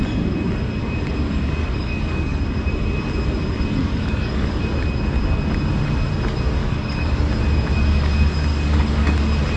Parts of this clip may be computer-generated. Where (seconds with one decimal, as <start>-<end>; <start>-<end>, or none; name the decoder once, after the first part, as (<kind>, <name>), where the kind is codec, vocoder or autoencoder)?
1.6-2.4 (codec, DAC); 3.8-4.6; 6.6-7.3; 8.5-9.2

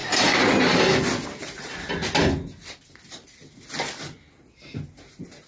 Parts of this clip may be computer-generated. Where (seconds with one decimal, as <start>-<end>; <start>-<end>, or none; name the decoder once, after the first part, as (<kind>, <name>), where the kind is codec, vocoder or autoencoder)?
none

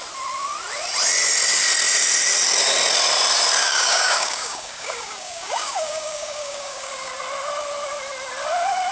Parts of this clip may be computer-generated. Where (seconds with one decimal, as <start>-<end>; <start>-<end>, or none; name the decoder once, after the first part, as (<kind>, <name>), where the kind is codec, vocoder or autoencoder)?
3.6-7.1 (codec, DAC)

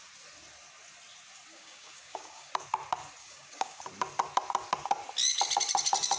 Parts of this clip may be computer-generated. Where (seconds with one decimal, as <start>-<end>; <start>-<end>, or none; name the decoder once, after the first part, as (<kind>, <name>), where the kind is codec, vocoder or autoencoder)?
1.5-2.5 (codec, DAC); 3.2-3.8

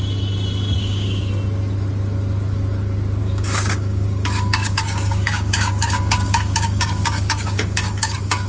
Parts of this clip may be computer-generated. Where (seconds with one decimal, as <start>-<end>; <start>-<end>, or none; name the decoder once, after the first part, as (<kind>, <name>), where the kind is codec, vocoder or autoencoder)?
0.8-1.3 (codec, DAC); 3.2-8.5

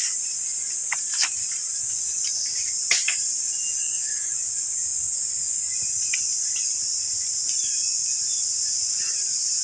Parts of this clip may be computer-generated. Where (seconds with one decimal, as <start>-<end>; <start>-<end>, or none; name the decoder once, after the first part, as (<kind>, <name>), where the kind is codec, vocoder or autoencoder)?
3.8-4.3 (codec, DAC)

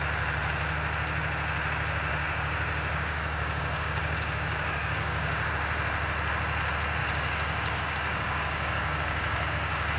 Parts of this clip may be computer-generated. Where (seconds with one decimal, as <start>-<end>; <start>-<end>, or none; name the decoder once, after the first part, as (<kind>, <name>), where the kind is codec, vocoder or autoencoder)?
2.1-5.5 (codec, DAC); 7.0-10.0

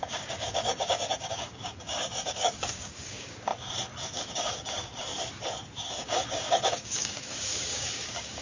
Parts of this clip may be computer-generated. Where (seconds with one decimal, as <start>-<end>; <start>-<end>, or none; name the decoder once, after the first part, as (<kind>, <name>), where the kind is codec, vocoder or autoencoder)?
0.0-3.5 (codec, DAC); 4.1-5.1; 5.9-8.4